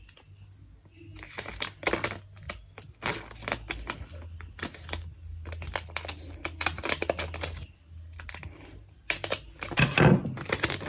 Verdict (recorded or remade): recorded